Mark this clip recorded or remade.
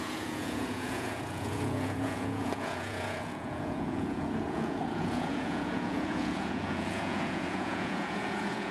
remade